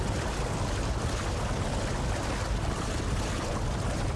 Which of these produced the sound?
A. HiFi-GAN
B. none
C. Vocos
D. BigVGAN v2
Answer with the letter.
B